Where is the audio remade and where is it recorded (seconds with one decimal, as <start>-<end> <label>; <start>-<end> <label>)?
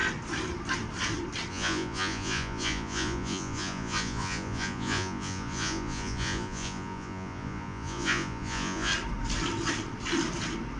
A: 0.0-1.5 recorded; 1.5-8.9 remade; 8.9-10.8 recorded